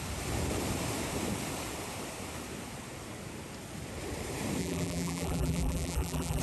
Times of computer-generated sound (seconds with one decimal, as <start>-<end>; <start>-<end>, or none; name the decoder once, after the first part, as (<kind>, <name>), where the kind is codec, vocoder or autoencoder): 4.6-6.4 (vocoder, BigVGAN v2)